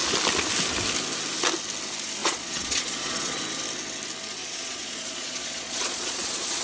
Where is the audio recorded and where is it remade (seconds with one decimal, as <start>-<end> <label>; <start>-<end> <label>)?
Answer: 0.0-2.2 recorded; 2.2-3.4 remade; 3.4-4.4 recorded; 4.4-6.6 remade